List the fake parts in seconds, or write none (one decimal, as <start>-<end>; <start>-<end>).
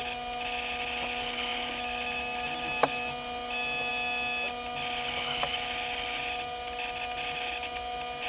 none